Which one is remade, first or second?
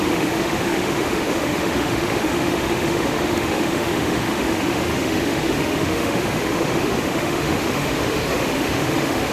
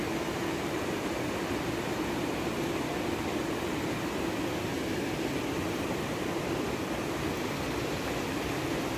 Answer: first